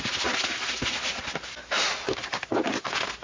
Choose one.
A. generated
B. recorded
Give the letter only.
B